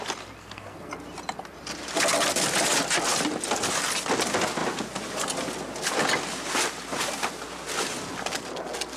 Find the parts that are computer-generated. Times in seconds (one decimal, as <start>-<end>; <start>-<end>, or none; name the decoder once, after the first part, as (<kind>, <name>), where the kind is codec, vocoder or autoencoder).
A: 0.4-0.9 (codec, SNAC)